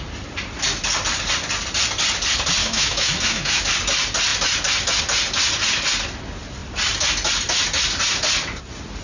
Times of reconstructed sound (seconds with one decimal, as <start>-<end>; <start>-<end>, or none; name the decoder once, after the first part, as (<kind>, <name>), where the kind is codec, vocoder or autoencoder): 2.6-3.6 (autoencoder, DAC-VAE)